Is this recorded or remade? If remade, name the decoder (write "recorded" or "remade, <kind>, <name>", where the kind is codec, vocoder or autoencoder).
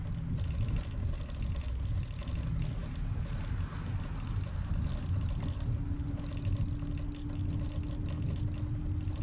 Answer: recorded